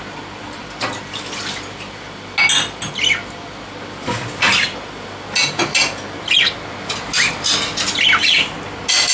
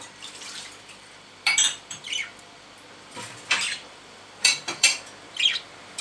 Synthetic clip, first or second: second